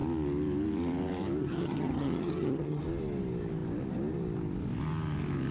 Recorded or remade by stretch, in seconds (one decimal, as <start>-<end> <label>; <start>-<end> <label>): 0.0-1.4 recorded; 1.4-2.8 remade; 2.8-5.5 recorded